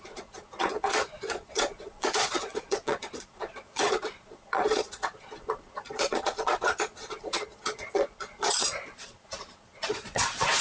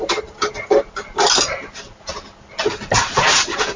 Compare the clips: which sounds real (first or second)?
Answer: second